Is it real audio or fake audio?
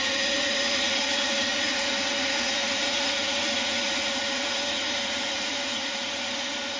fake